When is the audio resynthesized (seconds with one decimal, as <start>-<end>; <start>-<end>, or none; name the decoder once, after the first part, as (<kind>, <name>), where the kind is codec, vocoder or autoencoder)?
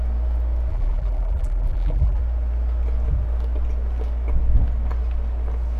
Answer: 0.7-2.2 (vocoder, BigVGAN v2)